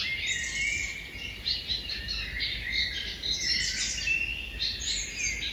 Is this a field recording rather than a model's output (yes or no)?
yes